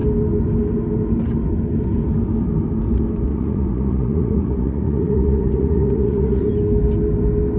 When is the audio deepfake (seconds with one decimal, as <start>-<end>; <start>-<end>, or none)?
3.3-6.5